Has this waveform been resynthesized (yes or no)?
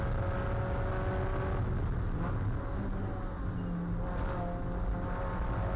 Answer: no